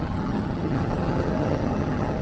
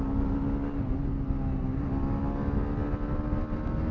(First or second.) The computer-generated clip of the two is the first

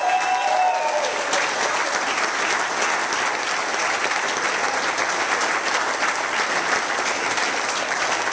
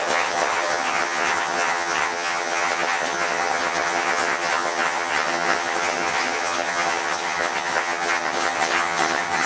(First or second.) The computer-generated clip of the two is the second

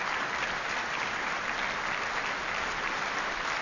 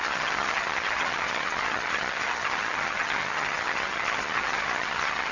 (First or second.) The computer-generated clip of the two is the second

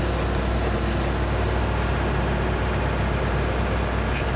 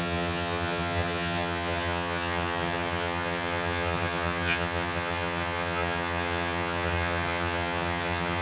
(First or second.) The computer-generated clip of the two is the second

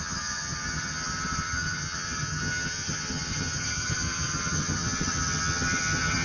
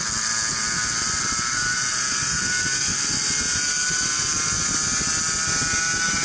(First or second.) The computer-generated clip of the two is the first